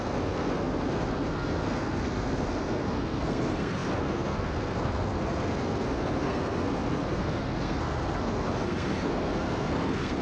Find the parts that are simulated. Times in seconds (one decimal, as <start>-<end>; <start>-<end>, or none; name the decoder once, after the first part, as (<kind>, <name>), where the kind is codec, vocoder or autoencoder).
0.0-10.2 (codec, SNAC)